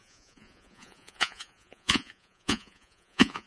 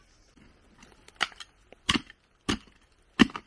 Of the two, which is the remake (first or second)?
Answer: first